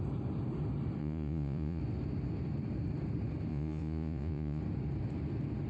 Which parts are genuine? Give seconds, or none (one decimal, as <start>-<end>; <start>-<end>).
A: 0.0-1.0; 1.8-3.5; 4.6-5.7